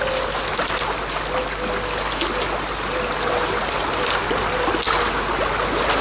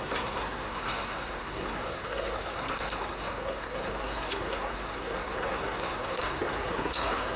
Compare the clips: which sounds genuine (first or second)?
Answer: first